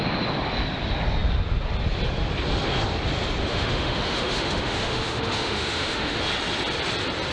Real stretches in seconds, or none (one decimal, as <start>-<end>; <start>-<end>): 0.0-3.4; 6.2-7.3